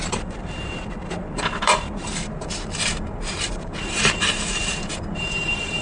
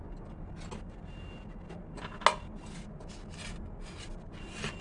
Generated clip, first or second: first